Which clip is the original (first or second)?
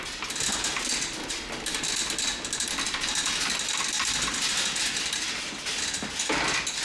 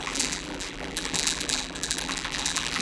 first